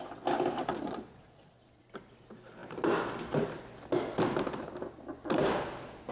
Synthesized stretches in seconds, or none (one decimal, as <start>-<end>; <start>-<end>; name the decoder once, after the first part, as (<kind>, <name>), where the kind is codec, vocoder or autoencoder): 0.7-1.8 (vocoder, Vocos)